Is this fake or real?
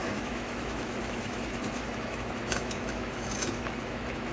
fake